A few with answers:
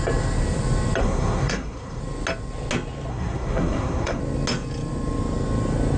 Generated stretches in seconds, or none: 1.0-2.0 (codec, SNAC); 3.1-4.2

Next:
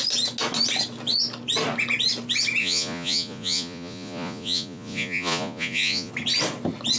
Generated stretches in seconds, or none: 2.6-6.1 (vocoder, Vocos)

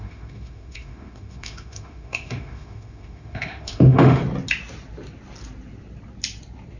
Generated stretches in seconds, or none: 0.0-4.2 (autoencoder, DAC-VAE)

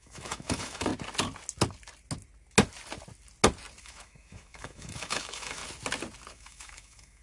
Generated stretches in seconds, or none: 0.0-0.9 (autoencoder, DAC-VAE); 3.8-5.6; 6.3-7.2

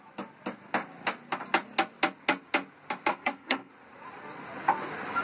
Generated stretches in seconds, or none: 3.1-3.7 (codec, SNAC)

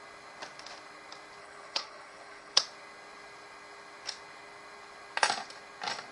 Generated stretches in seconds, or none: 1.4-2.6 (codec, HILCodec)

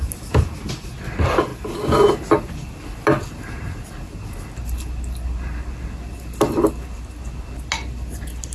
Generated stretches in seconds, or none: none